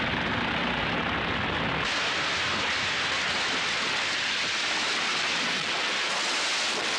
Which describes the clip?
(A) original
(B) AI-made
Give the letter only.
A